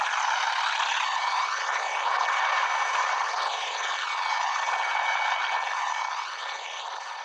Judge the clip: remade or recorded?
recorded